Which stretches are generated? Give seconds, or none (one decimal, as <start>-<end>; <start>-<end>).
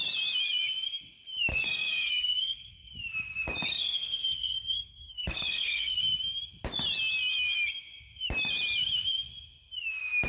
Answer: 1.5-2.9; 3.7-6.0